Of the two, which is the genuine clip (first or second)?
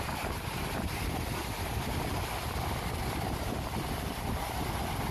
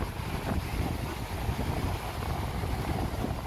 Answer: second